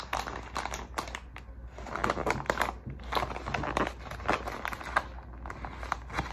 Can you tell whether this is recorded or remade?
recorded